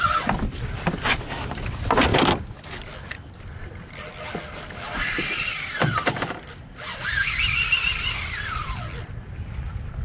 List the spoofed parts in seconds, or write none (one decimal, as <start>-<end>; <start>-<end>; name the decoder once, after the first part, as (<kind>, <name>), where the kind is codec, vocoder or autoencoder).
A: none